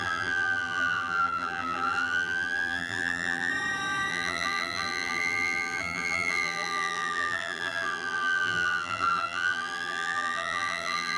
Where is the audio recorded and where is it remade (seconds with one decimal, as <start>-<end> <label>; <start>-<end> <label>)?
0.0-3.5 remade; 3.5-4.1 recorded; 4.1-11.2 remade